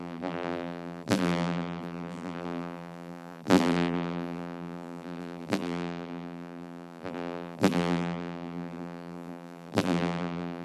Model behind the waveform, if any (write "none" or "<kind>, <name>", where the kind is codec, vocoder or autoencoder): vocoder, BigVGAN v2